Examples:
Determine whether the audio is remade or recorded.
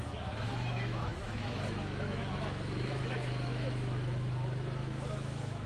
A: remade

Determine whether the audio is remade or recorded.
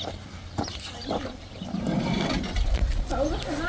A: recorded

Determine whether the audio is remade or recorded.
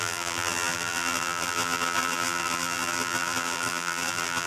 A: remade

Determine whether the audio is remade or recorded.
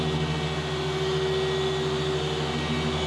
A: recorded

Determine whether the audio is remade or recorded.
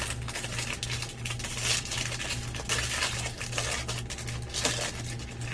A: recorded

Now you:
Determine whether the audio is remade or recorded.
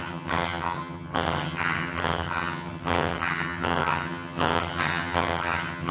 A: remade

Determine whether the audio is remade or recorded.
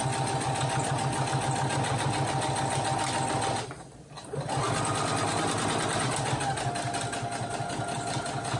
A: recorded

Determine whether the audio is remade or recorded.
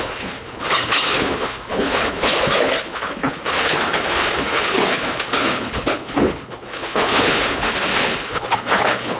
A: remade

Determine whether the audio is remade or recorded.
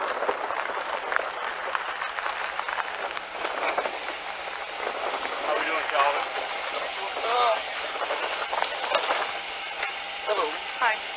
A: recorded